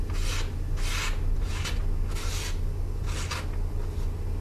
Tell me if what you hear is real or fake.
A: real